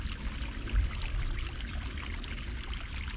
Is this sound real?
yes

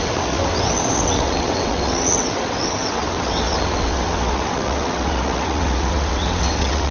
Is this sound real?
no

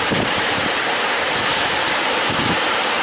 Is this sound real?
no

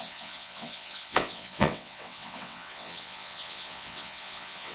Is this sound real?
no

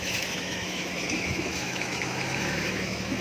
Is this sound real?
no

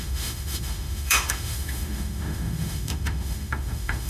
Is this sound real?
no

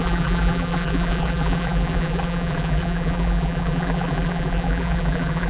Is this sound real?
no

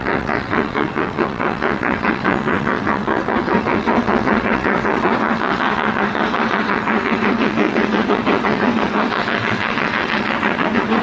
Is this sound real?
no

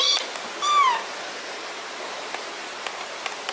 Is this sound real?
yes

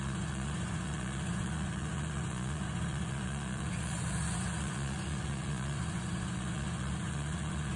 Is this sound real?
no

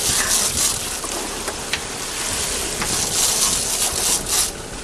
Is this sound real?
yes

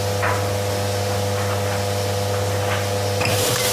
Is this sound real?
yes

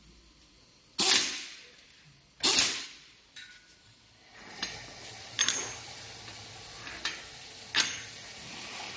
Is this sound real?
yes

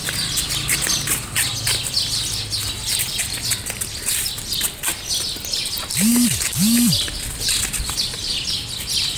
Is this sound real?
yes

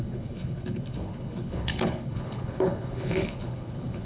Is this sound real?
no